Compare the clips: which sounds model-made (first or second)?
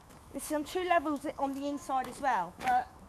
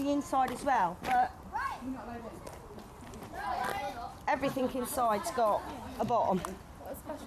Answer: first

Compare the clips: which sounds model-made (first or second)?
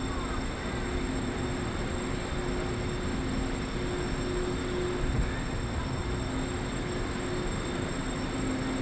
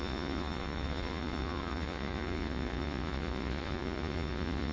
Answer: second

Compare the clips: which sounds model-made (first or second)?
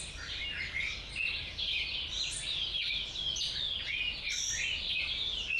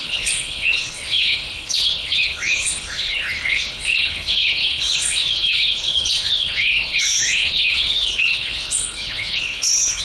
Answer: second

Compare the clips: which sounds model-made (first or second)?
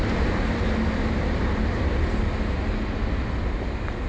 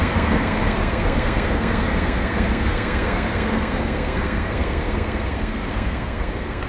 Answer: second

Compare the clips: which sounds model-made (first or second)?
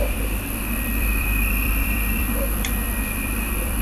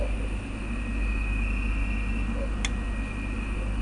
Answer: first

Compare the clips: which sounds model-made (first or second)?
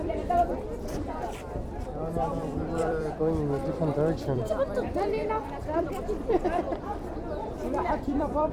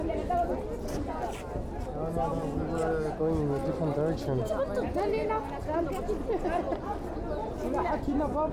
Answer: first